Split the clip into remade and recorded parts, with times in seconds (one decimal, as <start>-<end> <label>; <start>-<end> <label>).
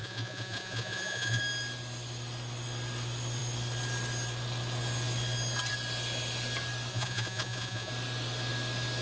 0.0-1.4 remade; 1.4-6.9 recorded; 6.9-7.9 remade; 7.9-9.0 recorded